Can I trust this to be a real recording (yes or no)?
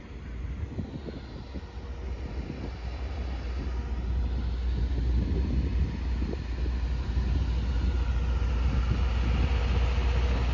yes